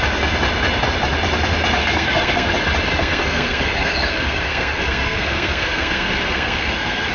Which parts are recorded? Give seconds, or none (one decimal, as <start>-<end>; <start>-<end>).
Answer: 0.0-1.8; 2.5-2.9